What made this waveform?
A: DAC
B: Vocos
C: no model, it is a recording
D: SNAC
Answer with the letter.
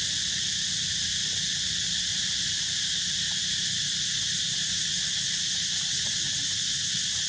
C